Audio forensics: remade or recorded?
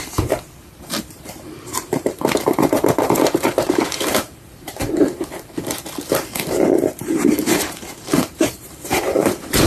remade